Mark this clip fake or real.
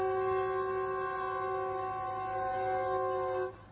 real